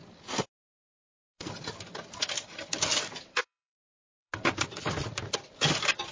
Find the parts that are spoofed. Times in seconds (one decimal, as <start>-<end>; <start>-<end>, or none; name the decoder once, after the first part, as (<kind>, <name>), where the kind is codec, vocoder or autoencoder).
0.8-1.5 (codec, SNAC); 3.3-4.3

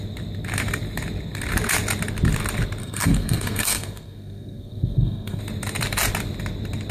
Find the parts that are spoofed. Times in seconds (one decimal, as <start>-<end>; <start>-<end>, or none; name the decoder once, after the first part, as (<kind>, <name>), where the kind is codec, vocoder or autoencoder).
2.8-5.4 (codec, SNAC)

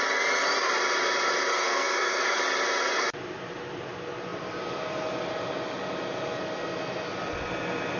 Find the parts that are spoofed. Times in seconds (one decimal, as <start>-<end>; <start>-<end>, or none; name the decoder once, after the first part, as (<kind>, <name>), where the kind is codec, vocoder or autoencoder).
1.5-2.4 (codec, SNAC)